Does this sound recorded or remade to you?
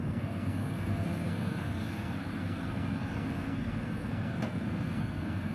remade